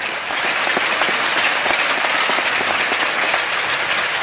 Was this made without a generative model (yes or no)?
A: yes